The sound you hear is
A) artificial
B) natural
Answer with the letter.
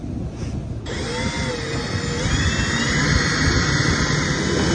B